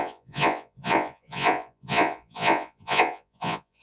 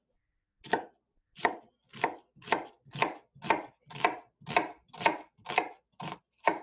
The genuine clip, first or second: second